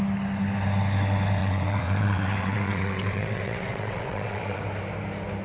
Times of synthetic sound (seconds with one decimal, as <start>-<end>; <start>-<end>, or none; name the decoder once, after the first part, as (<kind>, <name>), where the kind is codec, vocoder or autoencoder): 1.4-4.6 (vocoder, WaveNeXt)